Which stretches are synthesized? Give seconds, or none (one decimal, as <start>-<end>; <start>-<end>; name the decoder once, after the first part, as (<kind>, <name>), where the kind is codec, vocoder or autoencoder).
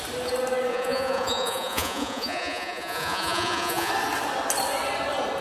0.7-3.9 (vocoder, Vocos)